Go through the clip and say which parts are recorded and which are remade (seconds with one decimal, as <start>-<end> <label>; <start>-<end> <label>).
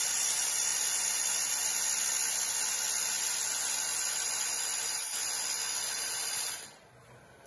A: 0.0-0.7 recorded; 0.7-1.8 remade; 1.8-7.5 recorded